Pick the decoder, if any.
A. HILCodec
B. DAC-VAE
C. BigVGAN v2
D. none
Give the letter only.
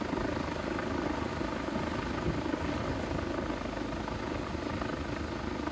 D